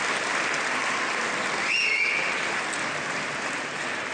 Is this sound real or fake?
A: real